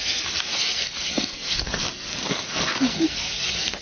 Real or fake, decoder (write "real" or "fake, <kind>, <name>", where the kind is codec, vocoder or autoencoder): fake, codec, SNAC